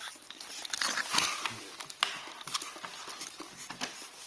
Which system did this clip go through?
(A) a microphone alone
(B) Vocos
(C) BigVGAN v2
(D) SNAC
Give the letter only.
A